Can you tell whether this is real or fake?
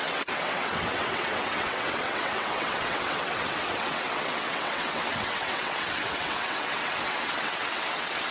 fake